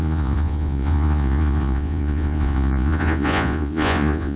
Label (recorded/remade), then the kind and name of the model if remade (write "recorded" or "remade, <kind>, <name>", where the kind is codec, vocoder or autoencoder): remade, vocoder, Vocos